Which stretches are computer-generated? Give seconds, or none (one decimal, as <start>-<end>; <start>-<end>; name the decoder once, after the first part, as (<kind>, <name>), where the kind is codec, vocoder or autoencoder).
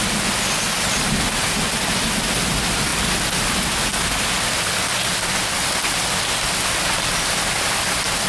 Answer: none